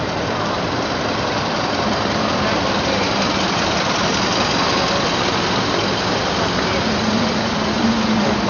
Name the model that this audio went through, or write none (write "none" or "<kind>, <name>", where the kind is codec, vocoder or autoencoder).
none